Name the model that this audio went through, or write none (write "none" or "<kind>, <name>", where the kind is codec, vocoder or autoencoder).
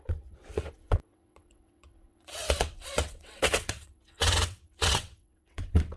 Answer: vocoder, WaveNeXt